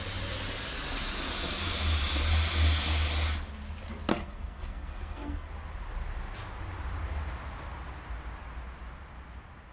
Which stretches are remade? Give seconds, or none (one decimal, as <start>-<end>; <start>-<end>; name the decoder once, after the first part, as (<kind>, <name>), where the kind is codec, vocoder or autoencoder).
4.1-5.5 (codec, SNAC)